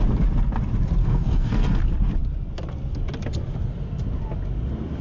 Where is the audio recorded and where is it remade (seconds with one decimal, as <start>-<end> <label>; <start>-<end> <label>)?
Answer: 0.0-1.0 recorded; 1.0-1.8 remade; 1.8-5.0 recorded